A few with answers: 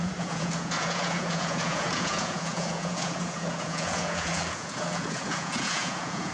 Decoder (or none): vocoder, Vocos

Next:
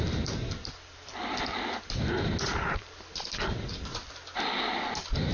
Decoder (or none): none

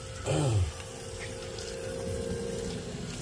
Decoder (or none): none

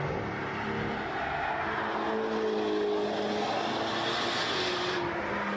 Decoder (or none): none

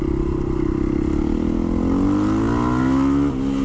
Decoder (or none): none